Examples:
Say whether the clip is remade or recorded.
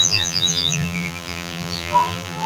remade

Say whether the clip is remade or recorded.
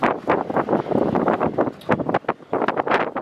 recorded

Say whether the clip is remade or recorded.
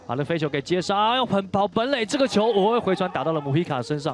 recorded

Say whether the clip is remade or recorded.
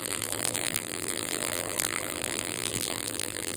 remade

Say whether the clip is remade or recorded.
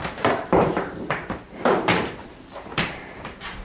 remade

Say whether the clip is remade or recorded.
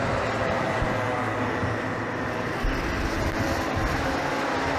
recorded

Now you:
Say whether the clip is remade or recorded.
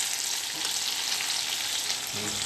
recorded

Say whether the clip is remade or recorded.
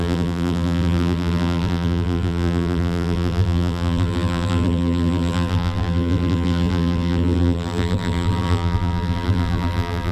remade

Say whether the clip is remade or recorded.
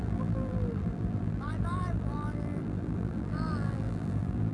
remade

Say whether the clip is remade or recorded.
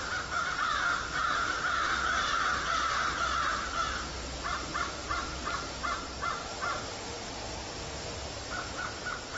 remade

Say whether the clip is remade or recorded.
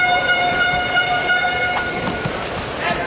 remade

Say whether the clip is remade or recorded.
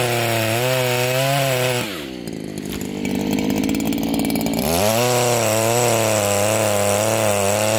recorded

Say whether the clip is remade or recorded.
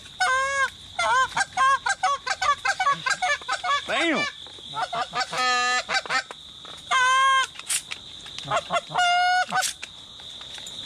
recorded